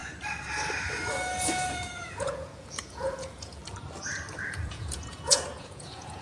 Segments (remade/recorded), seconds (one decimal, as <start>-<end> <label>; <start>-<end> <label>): 0.0-1.7 recorded; 1.7-3.6 remade; 3.6-4.4 recorded; 4.4-6.2 remade